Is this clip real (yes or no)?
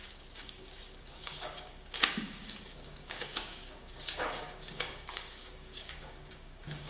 no